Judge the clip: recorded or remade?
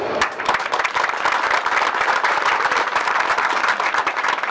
recorded